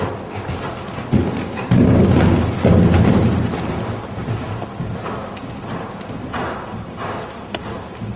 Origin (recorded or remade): recorded